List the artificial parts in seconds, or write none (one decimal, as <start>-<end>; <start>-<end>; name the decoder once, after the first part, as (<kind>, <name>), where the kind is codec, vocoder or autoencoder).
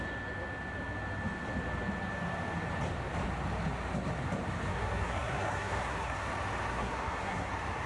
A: 4.7-6.3 (codec, SNAC); 6.7-7.5